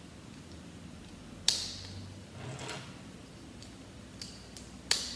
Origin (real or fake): real